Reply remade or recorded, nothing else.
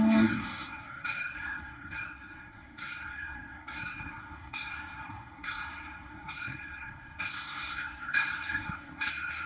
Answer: remade